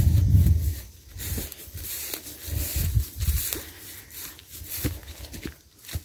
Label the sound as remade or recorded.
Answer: recorded